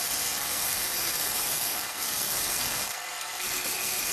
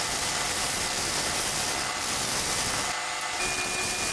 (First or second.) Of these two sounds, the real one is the second